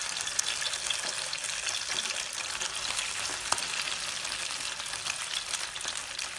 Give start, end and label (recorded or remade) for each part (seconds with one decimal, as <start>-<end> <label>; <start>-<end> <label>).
0.0-6.4 recorded